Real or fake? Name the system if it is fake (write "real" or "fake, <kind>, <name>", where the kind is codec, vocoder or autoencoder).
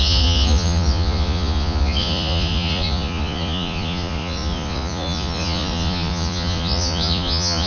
fake, vocoder, Vocos